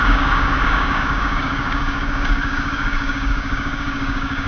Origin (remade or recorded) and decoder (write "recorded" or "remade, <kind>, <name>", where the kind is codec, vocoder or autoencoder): remade, codec, DAC